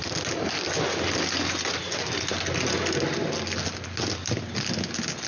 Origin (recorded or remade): recorded